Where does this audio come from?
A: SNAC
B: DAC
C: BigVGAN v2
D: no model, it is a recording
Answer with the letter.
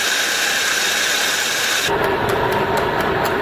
D